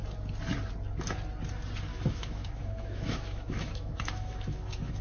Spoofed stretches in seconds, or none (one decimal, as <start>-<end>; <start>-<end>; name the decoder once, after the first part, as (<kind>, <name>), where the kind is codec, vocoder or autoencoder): 1.9-5.0 (autoencoder, DAC-VAE)